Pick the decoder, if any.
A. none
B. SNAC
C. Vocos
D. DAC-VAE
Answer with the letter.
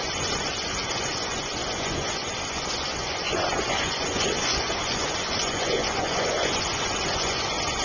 C